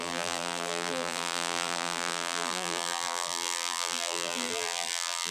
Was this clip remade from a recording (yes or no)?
yes